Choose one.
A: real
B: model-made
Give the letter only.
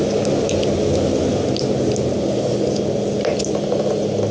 A